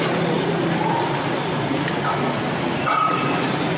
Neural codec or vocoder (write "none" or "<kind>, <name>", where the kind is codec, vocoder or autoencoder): none